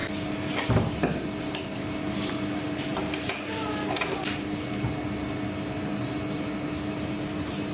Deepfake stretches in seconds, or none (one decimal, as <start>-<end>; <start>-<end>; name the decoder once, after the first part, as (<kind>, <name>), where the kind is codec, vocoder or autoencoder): none